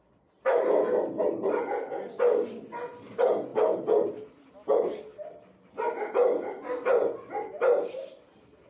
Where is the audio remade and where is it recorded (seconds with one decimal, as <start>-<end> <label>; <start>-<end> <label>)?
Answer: 0.0-8.7 recorded